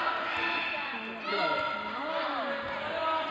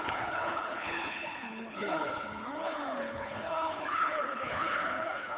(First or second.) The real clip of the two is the first